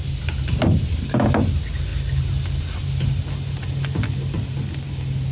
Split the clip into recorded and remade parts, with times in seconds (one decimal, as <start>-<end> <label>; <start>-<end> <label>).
0.0-5.3 recorded